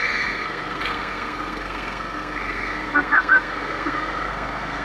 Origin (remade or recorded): remade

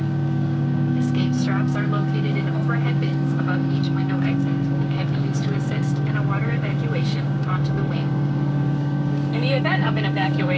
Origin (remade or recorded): remade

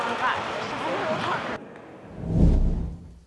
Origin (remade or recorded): recorded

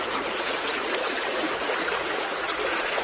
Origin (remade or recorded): remade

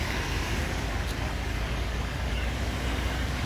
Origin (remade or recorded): remade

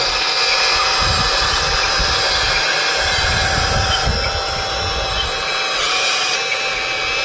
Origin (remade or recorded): recorded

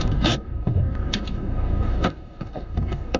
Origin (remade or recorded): remade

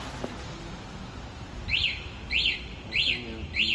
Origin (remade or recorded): recorded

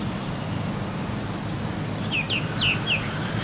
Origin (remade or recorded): recorded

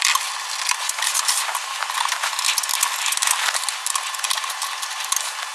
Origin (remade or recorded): recorded